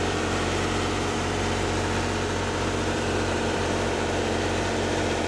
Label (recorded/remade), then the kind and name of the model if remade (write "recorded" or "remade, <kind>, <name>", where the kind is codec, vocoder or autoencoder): remade, vocoder, BigVGAN v2